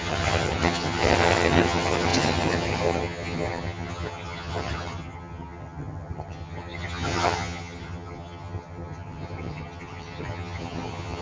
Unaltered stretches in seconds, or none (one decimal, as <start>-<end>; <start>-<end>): none